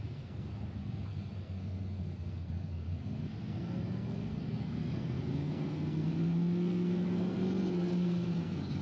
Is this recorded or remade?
remade